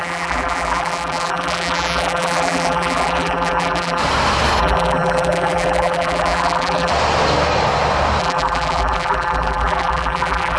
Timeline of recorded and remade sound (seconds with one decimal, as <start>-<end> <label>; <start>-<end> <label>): 0.0-4.0 remade; 4.0-4.6 recorded; 4.6-6.9 remade; 6.9-8.2 recorded; 8.2-10.6 remade